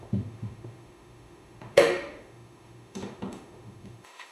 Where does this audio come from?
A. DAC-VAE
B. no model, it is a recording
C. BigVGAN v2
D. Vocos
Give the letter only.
A